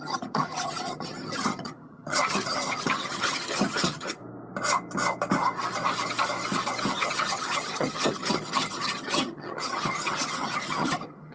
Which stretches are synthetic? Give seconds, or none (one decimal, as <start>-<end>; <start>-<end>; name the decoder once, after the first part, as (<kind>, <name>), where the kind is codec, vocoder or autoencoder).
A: 0.0-4.2 (vocoder, HiFi-GAN); 6.9-11.3